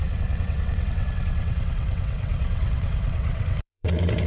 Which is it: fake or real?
fake